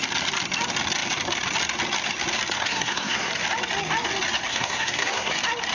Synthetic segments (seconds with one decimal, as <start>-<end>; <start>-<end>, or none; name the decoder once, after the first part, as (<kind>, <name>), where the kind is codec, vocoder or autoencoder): 2.6-3.3 (codec, SNAC); 4.5-5.3